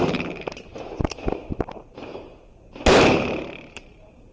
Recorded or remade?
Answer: remade